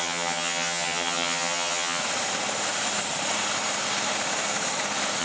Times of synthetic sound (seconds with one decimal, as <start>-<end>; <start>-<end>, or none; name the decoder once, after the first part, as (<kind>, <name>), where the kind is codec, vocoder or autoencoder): 0.0-2.0 (vocoder, HiFi-GAN)